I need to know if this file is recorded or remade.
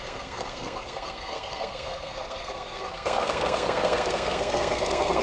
remade